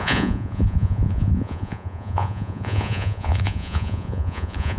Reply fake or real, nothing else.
fake